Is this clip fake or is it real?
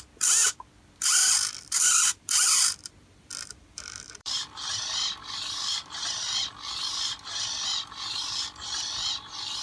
fake